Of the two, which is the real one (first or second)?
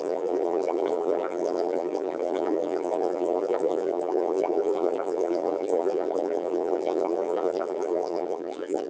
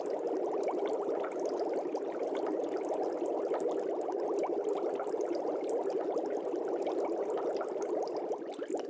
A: second